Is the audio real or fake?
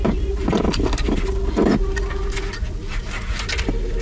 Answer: real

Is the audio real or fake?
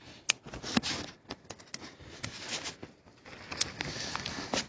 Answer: real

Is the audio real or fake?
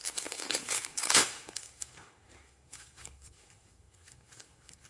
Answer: fake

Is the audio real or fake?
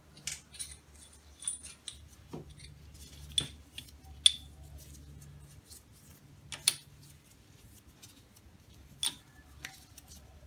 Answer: real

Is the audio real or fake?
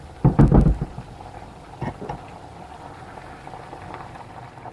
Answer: real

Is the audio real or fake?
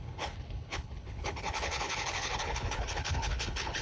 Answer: fake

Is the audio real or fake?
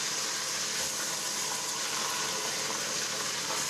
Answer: real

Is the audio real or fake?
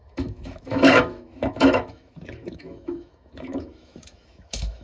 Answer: fake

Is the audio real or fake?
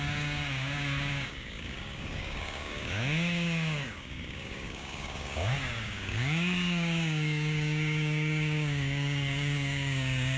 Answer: fake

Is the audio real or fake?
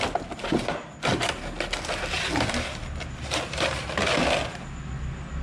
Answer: real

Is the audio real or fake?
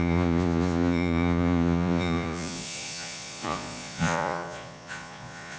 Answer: fake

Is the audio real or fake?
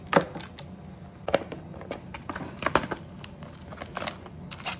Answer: real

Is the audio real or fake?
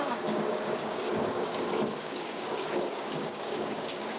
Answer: fake